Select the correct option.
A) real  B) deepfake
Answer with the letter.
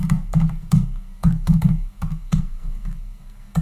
B